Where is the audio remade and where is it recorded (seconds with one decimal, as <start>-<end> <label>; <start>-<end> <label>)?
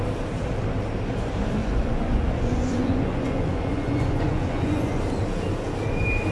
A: 0.0-1.6 recorded; 1.6-5.0 remade; 5.0-6.3 recorded